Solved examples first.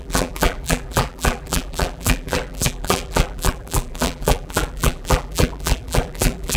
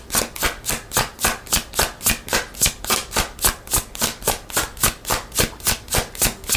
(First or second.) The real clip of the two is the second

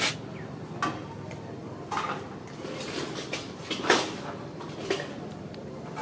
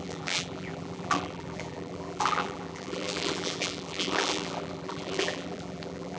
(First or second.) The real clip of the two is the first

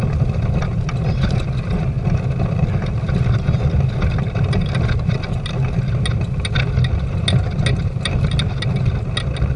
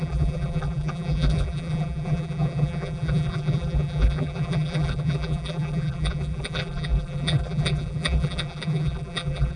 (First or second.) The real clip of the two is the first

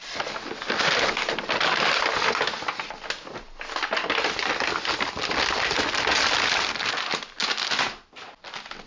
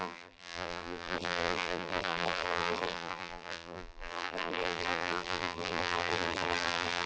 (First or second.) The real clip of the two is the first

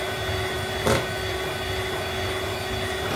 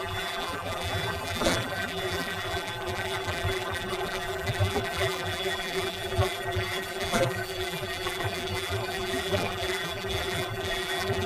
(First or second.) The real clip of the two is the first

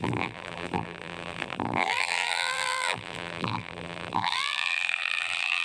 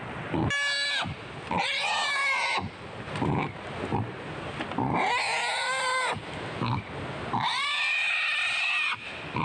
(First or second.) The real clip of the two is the second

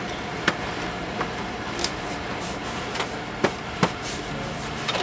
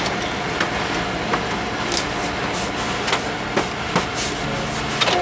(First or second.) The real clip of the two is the second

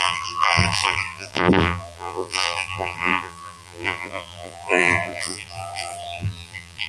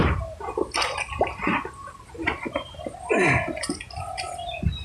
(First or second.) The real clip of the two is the second